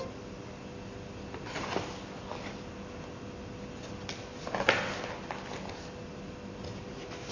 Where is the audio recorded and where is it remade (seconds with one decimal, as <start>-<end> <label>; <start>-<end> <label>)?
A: 0.0-7.3 recorded